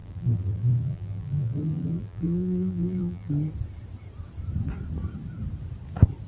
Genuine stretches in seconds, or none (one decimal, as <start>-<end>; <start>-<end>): 3.3-6.3